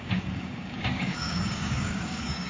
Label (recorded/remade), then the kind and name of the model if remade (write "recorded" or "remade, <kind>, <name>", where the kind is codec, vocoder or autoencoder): remade, codec, DAC